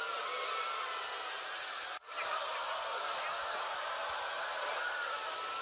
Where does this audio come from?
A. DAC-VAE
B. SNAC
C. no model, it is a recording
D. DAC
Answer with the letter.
C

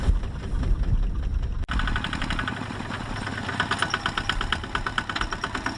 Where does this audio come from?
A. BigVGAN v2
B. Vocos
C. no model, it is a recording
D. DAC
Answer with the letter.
C